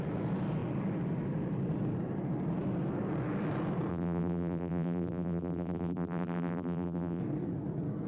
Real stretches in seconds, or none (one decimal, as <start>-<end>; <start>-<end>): 0.0-3.9; 7.2-8.1